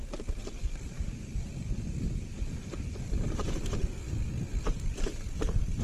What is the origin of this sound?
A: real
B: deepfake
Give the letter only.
A